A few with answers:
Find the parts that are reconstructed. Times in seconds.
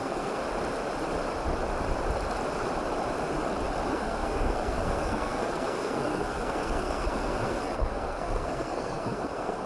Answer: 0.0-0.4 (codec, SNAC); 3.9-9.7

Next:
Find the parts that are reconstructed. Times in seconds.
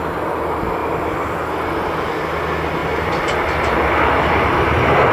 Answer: 2.8-4.6 (vocoder, BigVGAN v2)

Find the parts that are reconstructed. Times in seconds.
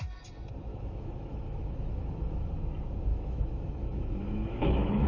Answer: 0.7-2.5 (autoencoder, DAC-VAE); 3.1-5.1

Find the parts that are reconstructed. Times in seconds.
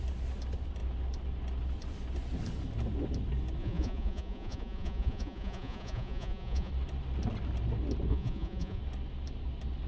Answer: 3.6-6.7 (vocoder, Vocos); 8.1-8.8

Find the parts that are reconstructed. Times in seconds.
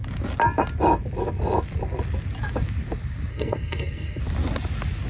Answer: 3.3-4.2 (codec, SNAC)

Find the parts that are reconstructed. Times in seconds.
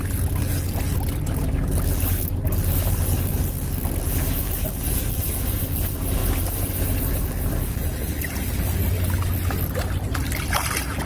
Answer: none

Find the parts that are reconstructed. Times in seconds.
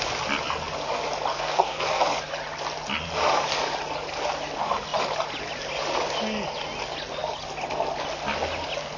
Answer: 1.3-2.0 (codec, SNAC)